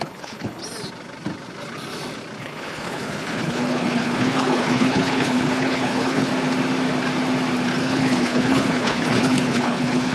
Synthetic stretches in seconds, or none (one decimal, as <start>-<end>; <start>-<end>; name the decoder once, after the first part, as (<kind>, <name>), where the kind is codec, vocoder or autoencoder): 0.0-0.6 (codec, HILCodec); 2.4-6.3; 7.8-10.1